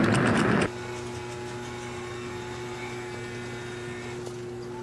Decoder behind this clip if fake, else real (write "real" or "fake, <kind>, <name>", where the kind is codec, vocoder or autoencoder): real